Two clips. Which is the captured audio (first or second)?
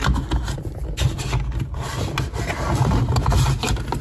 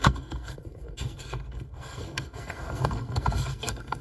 first